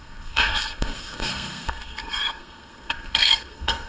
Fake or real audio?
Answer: fake